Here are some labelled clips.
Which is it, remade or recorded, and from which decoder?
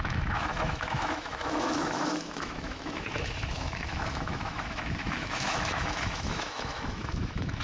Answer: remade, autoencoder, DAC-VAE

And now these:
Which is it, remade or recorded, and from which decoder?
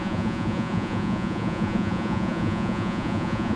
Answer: remade, vocoder, Vocos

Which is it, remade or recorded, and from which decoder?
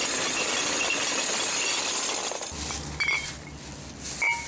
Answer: recorded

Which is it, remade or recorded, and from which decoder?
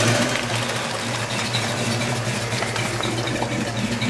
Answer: recorded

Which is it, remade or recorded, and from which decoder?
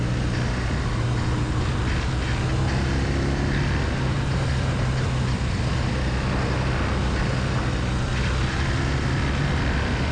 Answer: recorded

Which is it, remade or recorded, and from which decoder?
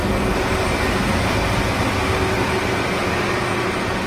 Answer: recorded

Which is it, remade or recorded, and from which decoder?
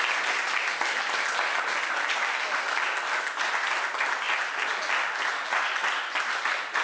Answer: recorded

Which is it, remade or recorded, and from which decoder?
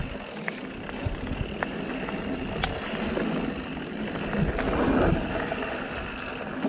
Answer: recorded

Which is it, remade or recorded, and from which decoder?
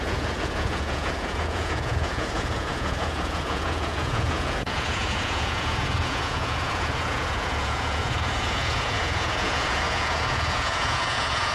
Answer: remade, vocoder, Vocos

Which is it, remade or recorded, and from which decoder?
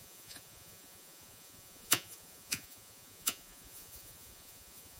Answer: remade, vocoder, Vocos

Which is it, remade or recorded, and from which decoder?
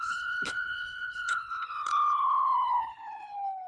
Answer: remade, codec, HILCodec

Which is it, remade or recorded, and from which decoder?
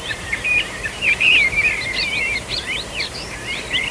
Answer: remade, vocoder, BigVGAN v2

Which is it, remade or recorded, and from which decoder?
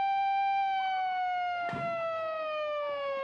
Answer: remade, autoencoder, DAC-VAE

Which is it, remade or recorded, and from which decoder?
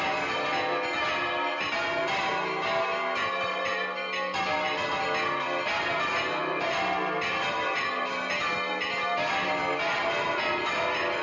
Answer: recorded